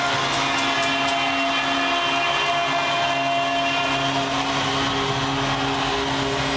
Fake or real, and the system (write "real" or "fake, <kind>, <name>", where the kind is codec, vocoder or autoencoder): real